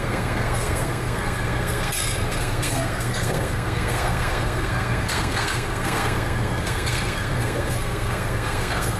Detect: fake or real fake